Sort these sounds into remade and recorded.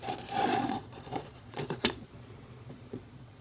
remade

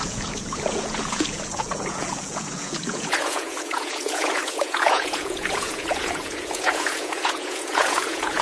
remade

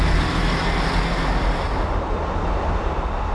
recorded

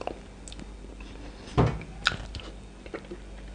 recorded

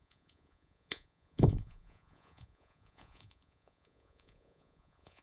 remade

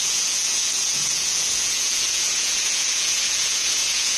remade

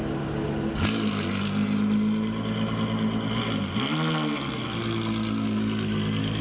recorded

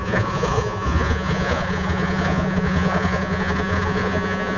remade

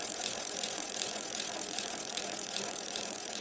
remade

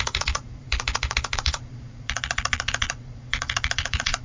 remade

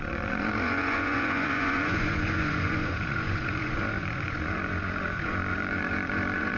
remade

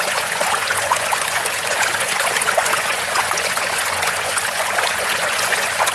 remade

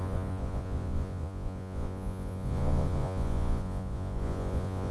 remade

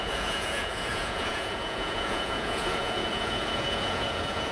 remade